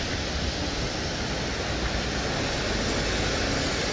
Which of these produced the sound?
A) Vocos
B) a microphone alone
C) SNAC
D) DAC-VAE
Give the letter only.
B